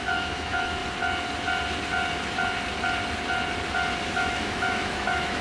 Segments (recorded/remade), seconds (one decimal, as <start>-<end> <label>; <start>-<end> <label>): 0.0-0.8 remade; 0.8-4.0 recorded; 4.0-5.4 remade